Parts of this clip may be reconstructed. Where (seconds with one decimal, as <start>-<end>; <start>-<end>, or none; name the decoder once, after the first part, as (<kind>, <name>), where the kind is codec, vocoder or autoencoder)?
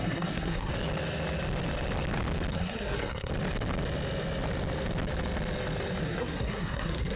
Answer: 0.0-0.7 (codec, SNAC); 2.5-3.3; 6.0-7.2